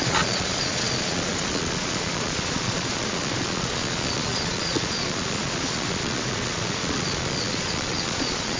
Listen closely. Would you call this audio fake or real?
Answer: fake